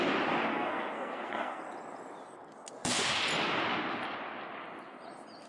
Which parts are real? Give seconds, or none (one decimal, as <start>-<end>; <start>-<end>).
0.0-0.5; 1.6-5.5